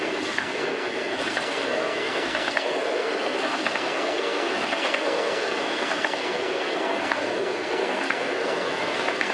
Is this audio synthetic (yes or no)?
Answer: yes